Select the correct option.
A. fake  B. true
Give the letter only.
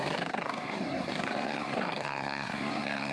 A